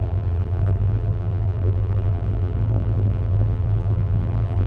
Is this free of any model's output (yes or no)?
no